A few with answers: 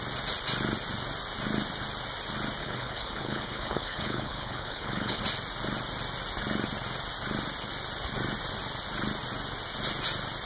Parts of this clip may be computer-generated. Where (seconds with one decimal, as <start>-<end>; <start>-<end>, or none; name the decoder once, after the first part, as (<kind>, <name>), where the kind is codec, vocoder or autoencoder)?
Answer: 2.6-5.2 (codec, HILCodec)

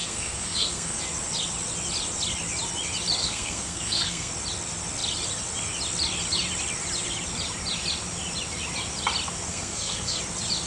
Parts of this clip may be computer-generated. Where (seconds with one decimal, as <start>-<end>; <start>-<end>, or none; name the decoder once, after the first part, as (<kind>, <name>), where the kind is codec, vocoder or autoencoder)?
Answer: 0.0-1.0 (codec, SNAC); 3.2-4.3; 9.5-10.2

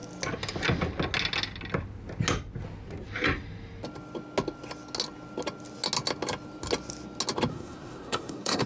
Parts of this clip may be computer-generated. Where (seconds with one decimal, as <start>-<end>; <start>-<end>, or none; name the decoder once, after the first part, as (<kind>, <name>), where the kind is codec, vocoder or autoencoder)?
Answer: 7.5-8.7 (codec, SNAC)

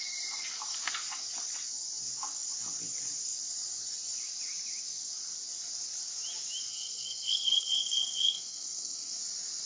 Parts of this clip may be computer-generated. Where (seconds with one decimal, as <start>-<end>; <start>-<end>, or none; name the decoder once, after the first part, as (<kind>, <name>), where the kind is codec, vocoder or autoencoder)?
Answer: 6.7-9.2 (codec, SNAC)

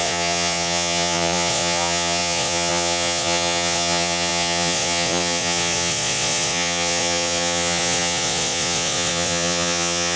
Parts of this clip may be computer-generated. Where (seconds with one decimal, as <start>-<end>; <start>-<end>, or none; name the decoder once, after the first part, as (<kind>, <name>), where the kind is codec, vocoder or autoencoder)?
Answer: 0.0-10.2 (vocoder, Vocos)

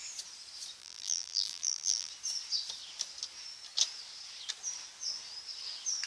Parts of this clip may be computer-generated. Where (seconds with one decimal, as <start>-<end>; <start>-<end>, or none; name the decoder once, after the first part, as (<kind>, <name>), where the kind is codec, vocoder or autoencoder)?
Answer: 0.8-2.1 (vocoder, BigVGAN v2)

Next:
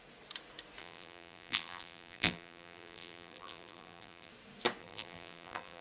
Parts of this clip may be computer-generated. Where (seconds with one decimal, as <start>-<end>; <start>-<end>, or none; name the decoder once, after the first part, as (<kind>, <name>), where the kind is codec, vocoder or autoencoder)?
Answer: 0.8-4.3 (vocoder, BigVGAN v2); 4.8-5.8

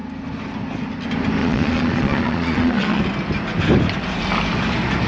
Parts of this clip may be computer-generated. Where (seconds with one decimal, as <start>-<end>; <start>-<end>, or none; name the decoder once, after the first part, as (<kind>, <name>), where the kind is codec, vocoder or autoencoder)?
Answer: 1.4-3.0 (vocoder, Vocos)